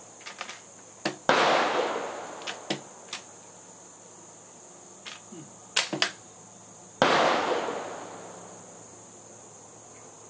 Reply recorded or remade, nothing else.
recorded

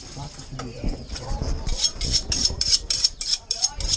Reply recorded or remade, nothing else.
remade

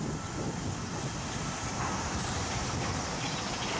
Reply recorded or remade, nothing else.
recorded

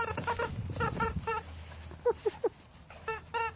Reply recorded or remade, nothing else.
recorded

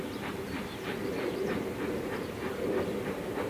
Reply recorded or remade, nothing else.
remade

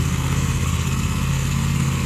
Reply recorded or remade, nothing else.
remade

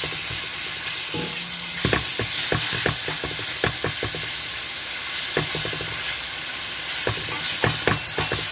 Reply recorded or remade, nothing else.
recorded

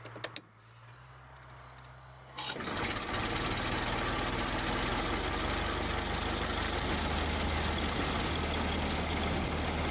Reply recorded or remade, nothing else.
recorded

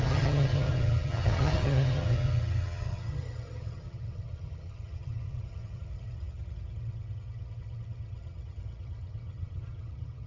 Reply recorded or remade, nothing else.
remade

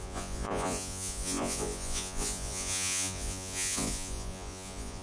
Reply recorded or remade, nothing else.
remade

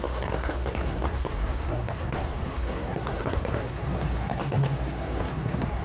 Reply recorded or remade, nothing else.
remade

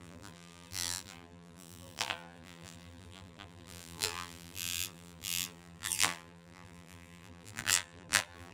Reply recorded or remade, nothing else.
remade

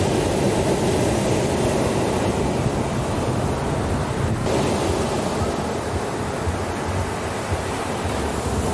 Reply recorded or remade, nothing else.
recorded